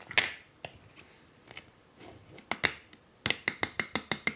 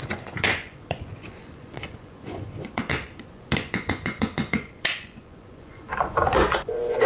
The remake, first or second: second